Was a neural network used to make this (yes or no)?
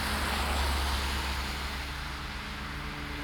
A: no